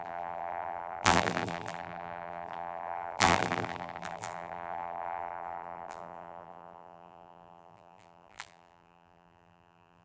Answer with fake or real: fake